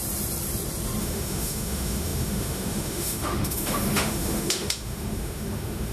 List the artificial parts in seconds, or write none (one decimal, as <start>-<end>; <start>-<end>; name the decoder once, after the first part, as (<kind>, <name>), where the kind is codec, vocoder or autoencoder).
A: 1.0-5.9 (autoencoder, DAC-VAE)